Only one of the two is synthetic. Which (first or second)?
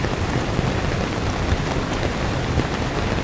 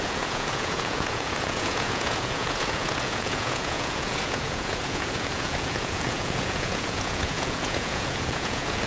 second